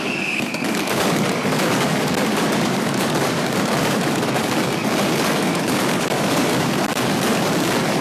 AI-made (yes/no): yes